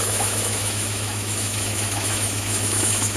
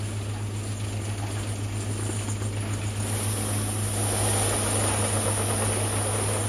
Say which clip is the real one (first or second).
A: second